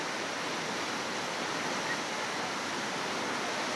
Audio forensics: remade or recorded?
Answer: recorded